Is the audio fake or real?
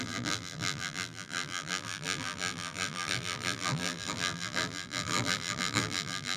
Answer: fake